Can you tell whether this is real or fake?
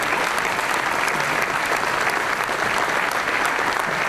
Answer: real